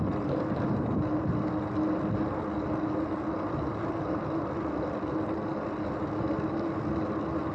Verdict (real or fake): real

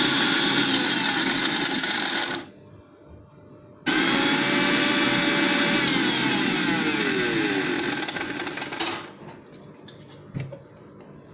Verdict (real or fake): real